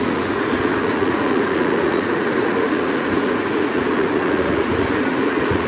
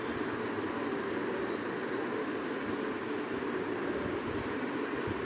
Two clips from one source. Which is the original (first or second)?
second